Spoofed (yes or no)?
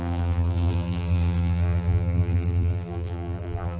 yes